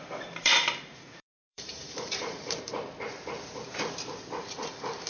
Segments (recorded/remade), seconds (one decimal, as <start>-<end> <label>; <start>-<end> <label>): 0.0-2.7 remade; 2.7-4.4 recorded; 4.4-5.1 remade

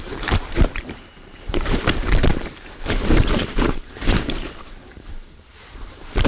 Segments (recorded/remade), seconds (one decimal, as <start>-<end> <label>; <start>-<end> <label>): 0.0-6.3 remade

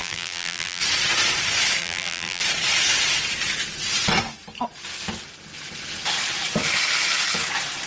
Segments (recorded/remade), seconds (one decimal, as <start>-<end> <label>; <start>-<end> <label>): 0.0-0.8 remade; 0.8-1.8 recorded; 1.8-2.4 remade; 2.4-7.9 recorded

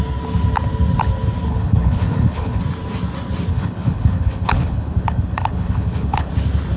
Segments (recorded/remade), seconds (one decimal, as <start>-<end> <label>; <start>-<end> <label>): 0.0-1.5 recorded; 1.5-2.6 remade; 2.6-3.5 recorded; 3.5-6.3 remade; 6.3-6.8 recorded

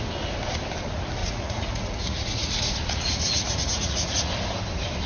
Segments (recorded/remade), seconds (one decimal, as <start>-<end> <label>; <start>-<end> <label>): 0.0-1.2 recorded; 1.2-4.3 remade; 4.3-5.1 recorded

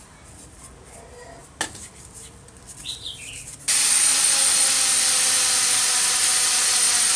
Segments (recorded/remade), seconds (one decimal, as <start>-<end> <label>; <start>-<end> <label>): 0.0-2.8 recorded; 2.8-4.0 remade; 4.0-7.2 recorded